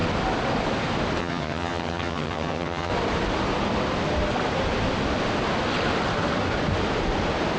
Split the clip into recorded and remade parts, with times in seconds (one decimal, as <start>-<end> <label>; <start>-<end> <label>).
0.0-1.2 recorded; 1.2-2.9 remade; 2.9-7.6 recorded